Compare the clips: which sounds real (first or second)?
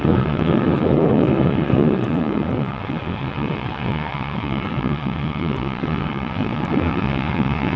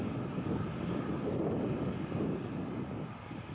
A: second